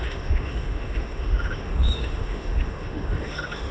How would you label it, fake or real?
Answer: fake